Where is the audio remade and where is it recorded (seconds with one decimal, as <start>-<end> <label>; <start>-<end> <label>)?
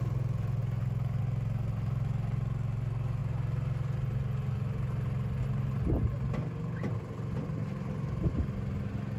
0.0-9.2 recorded